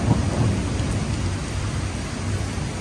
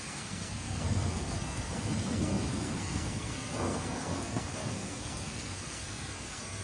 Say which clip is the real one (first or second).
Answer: first